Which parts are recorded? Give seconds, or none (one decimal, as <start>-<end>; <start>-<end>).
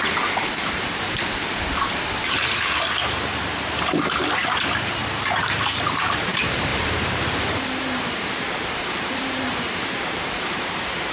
none